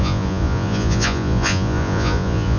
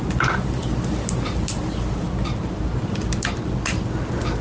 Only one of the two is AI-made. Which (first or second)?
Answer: first